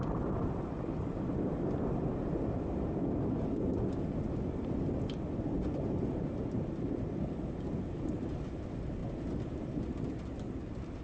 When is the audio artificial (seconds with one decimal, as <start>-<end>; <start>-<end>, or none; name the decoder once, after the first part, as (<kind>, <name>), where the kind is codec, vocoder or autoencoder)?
3.7-4.7 (vocoder, BigVGAN v2)